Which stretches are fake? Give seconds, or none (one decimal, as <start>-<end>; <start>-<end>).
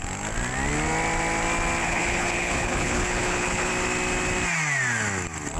1.8-3.7